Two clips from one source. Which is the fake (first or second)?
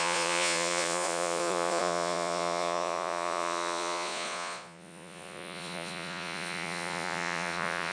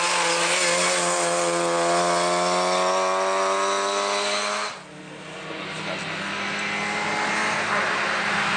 first